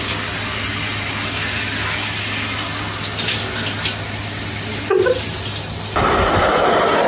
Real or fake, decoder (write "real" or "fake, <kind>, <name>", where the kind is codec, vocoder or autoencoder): real